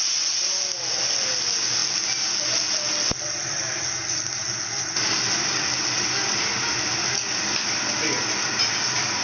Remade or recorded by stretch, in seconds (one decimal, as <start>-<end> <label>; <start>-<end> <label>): 0.0-9.2 recorded